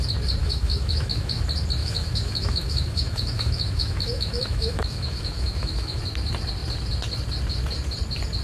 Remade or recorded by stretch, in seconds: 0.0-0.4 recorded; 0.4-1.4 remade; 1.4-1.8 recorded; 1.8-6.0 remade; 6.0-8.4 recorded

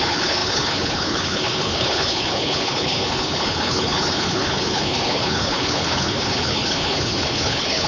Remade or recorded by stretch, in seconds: 0.0-7.9 remade